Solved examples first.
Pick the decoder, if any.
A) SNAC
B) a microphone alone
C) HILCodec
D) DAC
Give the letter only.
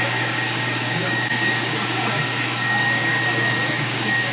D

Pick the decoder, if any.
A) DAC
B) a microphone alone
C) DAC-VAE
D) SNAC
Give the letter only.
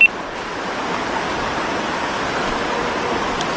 B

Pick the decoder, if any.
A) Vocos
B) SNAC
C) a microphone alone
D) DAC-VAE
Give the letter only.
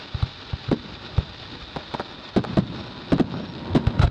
C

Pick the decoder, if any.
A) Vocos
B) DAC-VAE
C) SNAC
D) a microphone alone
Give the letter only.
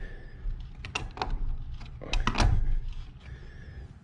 D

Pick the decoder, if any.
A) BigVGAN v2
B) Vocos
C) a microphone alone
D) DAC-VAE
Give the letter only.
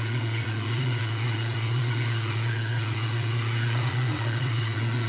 B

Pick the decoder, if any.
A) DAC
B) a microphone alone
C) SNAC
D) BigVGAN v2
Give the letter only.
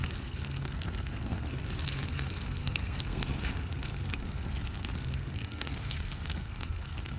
C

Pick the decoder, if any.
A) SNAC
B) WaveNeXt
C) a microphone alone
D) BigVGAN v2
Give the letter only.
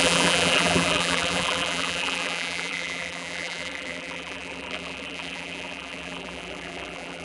D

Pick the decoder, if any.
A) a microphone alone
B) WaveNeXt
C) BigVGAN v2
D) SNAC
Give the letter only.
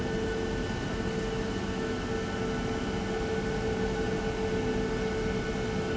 A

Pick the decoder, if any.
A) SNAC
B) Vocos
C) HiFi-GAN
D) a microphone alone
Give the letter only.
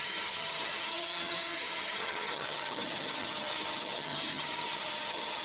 C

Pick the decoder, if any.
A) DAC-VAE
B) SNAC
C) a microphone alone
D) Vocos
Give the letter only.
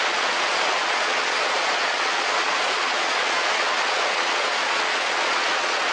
D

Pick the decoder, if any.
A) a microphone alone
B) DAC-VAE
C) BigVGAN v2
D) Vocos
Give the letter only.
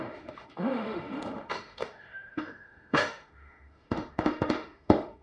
B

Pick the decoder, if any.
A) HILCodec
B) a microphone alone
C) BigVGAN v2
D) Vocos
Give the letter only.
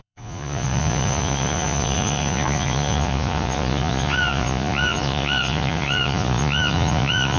D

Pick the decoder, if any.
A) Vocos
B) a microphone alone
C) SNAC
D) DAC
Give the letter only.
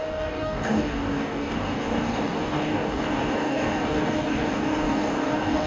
D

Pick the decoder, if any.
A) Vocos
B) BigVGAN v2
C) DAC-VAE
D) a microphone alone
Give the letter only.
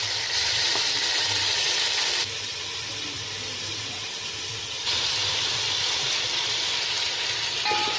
B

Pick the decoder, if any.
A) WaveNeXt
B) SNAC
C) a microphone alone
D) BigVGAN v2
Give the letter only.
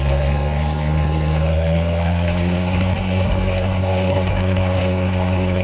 B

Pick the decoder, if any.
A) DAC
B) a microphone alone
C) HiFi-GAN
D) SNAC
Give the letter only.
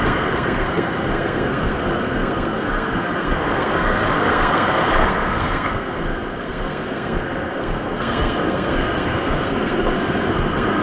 D